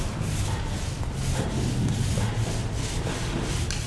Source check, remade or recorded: recorded